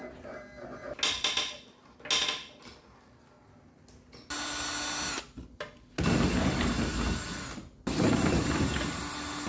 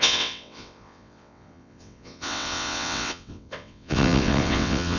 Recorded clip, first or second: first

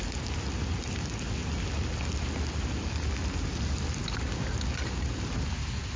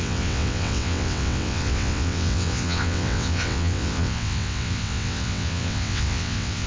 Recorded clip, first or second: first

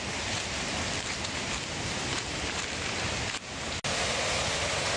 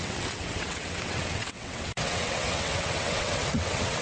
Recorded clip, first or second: first